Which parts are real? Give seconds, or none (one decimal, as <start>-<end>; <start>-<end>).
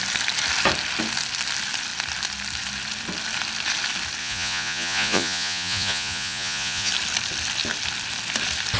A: 0.0-4.2; 6.9-8.8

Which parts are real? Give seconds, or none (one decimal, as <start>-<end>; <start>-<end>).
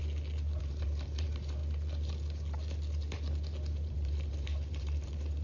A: 0.0-0.6; 1.6-3.9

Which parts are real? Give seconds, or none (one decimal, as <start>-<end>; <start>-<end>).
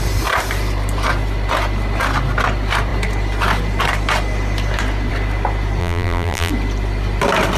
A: 0.0-5.8; 6.5-7.6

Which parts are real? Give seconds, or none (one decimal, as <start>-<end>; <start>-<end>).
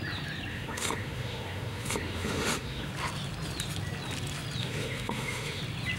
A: 0.0-0.5; 2.9-4.6; 5.6-6.0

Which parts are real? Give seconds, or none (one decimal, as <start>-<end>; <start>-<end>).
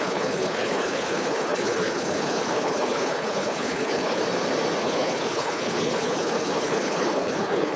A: 4.2-4.8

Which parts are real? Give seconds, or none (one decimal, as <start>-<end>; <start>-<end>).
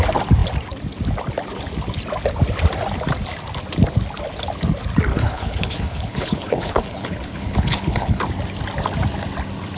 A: 0.0-5.1; 8.2-9.8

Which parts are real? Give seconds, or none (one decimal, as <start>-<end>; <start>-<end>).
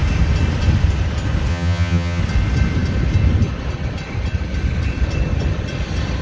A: 0.0-1.5; 2.2-6.2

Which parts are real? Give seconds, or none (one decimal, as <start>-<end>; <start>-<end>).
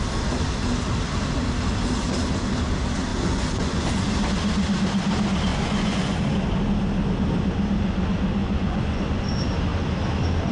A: 0.0-3.1; 3.9-5.5; 6.2-8.4; 9.0-10.5